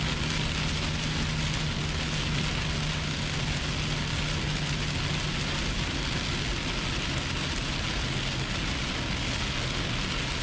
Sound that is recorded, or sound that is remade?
recorded